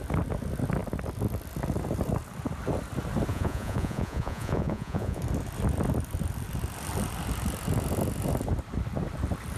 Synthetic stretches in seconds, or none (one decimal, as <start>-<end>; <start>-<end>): 3.3-5.2